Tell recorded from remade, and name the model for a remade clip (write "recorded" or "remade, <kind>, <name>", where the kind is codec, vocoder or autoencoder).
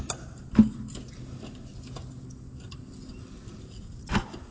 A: recorded